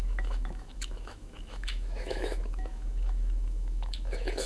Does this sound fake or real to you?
fake